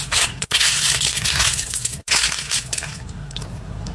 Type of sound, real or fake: fake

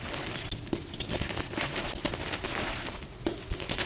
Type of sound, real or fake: real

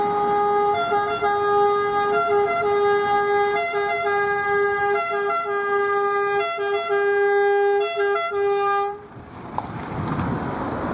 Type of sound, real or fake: real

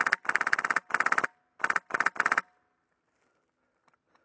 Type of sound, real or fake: real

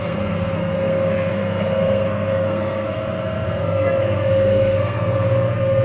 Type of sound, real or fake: fake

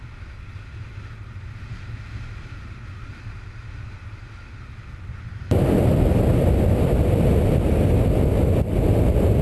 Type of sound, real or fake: real